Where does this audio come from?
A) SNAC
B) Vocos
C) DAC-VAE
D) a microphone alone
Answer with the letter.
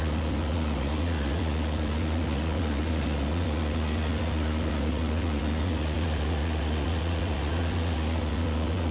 B